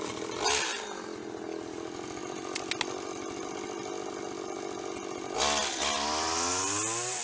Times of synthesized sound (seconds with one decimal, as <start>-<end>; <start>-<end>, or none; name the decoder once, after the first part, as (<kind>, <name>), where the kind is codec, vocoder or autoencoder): none

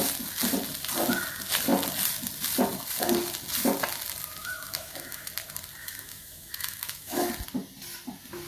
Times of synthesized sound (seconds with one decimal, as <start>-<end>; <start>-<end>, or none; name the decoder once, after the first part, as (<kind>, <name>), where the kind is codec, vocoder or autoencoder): 4.4-5.3 (autoencoder, DAC-VAE); 5.8-7.3

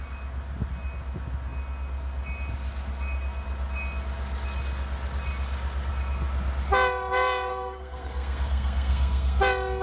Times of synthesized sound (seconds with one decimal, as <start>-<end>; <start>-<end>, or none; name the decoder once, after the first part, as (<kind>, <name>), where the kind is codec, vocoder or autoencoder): 7.5-9.4 (codec, SNAC)

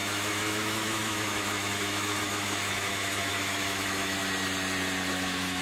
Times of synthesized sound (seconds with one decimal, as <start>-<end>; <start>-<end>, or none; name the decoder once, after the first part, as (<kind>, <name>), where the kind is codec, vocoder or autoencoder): 0.0-4.2 (autoencoder, DAC-VAE); 5.1-5.6

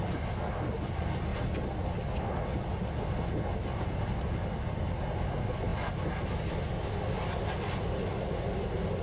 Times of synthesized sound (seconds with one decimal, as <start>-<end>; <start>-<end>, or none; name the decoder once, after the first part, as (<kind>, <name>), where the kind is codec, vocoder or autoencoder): none

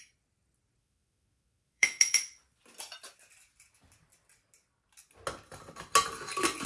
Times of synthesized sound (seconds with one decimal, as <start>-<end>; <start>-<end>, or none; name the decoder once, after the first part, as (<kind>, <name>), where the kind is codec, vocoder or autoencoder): 0.8-2.2 (autoencoder, DAC-VAE)

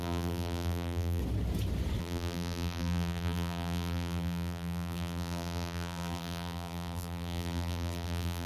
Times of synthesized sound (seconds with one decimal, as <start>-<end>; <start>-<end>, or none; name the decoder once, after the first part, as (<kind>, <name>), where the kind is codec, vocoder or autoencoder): 0.0-1.2 (vocoder, BigVGAN v2); 2.0-8.5

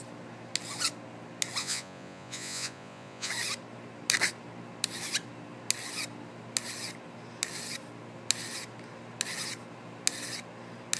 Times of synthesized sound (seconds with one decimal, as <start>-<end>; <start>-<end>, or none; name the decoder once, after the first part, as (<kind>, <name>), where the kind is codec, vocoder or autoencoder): 1.6-3.3 (vocoder, Vocos)